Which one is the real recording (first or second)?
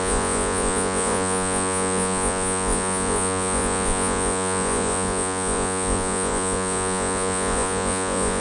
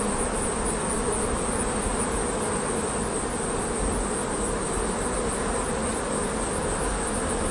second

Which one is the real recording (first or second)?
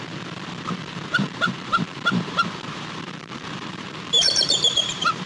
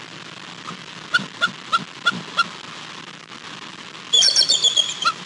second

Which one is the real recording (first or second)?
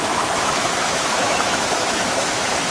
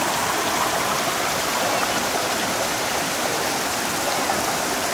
second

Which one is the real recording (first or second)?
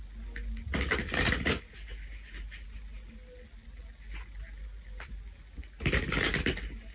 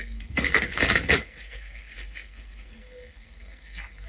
first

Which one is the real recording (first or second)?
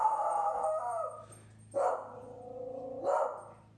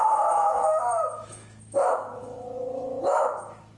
first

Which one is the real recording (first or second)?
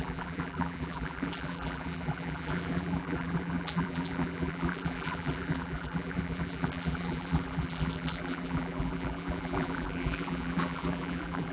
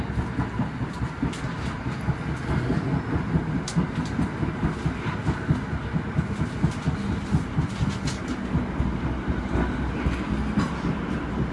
second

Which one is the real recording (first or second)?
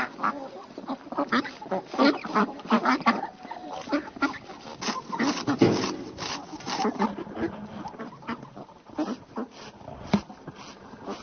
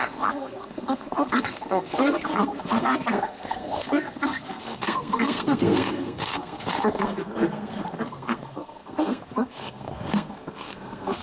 first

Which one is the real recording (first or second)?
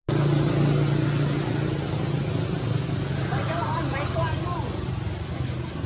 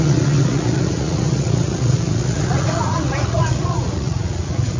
first